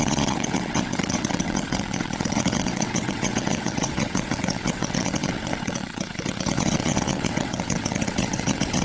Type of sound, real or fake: fake